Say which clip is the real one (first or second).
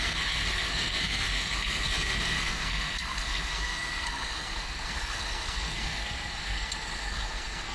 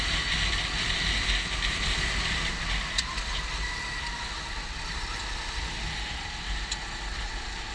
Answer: second